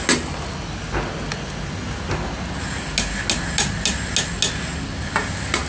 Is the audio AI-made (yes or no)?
no